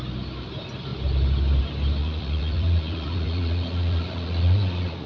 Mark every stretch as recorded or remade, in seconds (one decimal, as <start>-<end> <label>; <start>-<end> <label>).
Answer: 0.0-2.0 recorded; 2.0-5.1 remade